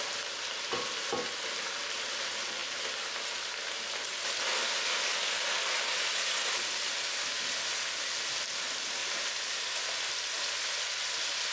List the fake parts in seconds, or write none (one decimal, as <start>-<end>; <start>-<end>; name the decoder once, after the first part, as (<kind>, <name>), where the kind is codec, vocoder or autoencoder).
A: 9.0-9.9 (vocoder, BigVGAN v2)